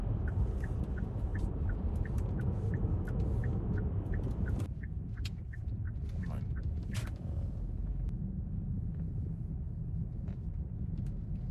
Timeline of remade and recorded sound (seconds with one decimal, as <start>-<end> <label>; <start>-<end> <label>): 0.0-1.3 recorded; 1.3-2.4 remade; 2.4-11.5 recorded